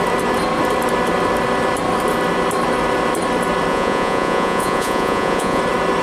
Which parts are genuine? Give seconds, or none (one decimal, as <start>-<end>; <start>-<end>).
0.0-3.7; 5.6-6.0